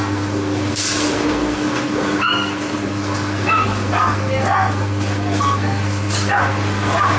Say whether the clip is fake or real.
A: fake